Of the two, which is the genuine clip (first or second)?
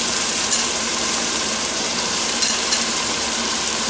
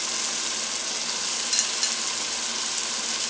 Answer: second